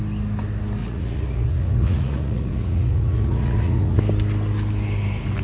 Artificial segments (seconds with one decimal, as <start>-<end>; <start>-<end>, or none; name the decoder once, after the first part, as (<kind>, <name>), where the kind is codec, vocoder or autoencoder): 0.8-4.0 (vocoder, Vocos)